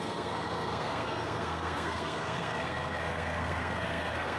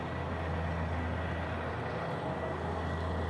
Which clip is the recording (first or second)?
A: second